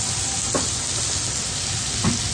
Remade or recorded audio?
recorded